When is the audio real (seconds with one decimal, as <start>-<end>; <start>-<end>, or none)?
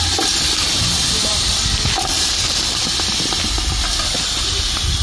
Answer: 0.0-5.0